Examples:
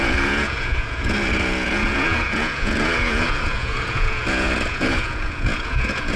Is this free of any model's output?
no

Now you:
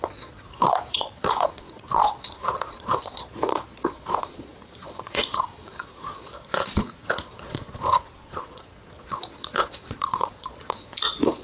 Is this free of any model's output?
no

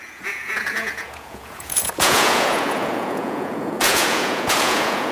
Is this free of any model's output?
no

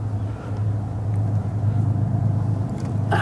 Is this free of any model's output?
yes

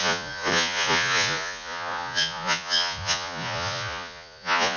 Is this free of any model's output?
no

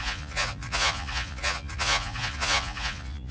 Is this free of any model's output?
no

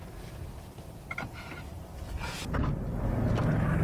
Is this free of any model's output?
yes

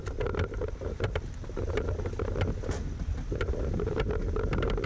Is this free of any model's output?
yes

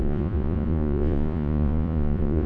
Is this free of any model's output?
no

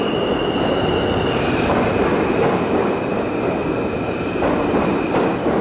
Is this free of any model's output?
yes